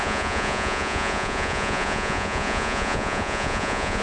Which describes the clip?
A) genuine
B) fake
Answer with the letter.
B